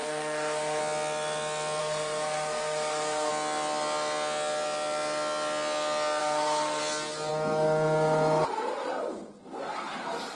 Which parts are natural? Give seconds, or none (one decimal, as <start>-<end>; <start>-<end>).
0.8-1.8; 3.3-6.2; 6.8-10.3